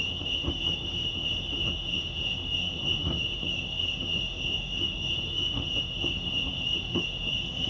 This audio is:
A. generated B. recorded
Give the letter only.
A